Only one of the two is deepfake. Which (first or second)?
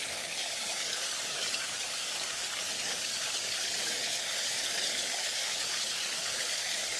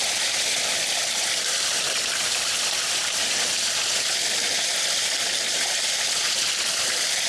first